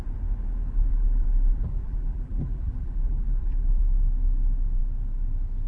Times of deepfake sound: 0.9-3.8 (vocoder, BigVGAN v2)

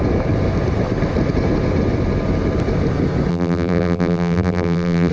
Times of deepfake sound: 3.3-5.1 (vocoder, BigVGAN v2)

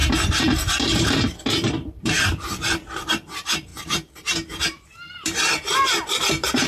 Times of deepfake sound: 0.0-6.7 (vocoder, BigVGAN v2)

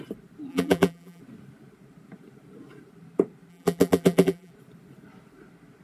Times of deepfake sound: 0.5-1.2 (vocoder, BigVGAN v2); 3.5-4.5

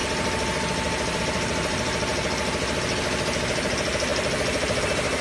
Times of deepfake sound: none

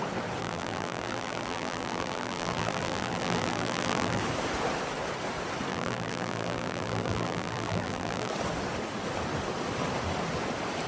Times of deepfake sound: 0.4-4.2 (vocoder, BigVGAN v2); 5.7-8.3

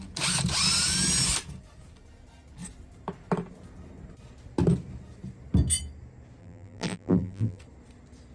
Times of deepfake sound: 6.4-7.6 (vocoder, BigVGAN v2)

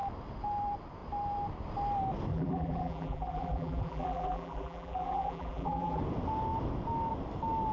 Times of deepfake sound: 2.3-6.0 (vocoder, BigVGAN v2)